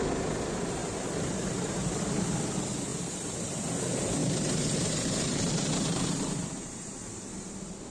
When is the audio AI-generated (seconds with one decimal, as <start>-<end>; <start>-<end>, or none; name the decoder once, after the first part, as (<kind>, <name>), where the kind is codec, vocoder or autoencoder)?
0.8-2.0 (vocoder, BigVGAN v2); 2.9-3.6; 4.2-7.5